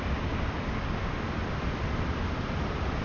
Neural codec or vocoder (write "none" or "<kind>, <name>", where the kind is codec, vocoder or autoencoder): none